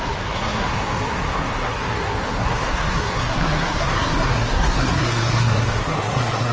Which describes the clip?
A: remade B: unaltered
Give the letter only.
A